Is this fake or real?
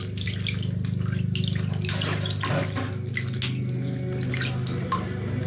real